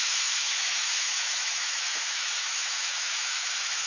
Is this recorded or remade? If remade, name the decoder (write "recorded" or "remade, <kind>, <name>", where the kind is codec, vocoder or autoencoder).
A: remade, autoencoder, DAC-VAE